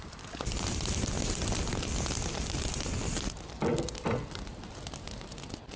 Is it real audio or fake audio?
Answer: real